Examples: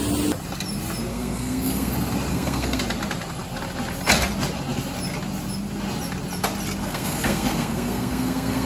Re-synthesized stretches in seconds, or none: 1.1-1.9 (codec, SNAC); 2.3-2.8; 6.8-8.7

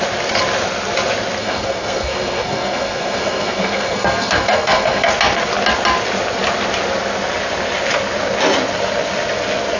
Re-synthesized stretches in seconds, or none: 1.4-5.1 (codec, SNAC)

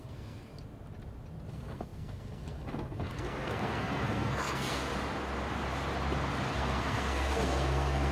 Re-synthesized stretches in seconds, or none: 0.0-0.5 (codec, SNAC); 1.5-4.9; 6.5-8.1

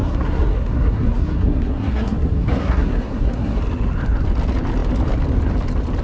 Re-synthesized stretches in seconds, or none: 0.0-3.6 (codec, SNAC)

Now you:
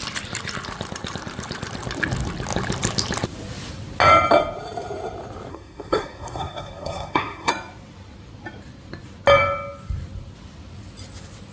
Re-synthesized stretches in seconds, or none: 5.5-7.5 (codec, SNAC)

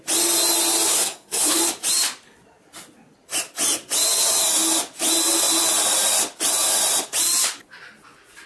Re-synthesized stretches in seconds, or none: 0.9-1.6 (codec, SNAC)